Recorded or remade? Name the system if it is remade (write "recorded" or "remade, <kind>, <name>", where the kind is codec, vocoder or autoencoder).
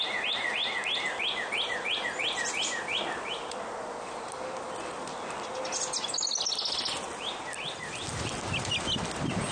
recorded